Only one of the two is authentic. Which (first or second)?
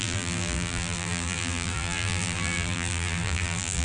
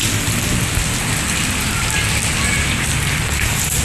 second